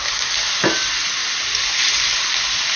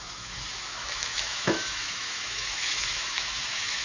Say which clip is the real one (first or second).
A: first